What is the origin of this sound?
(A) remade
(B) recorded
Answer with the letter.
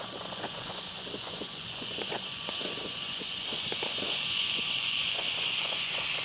A